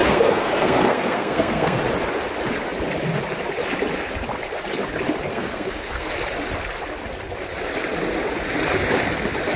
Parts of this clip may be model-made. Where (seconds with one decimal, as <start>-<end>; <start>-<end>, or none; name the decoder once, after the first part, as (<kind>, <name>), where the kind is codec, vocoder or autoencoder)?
0.0-1.8 (codec, SNAC); 5.3-6.1